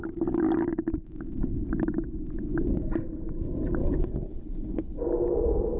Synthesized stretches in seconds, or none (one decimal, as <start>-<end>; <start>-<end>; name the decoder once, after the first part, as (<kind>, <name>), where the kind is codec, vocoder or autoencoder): 3.8-5.0 (codec, HILCodec)